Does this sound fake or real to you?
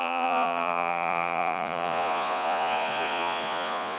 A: fake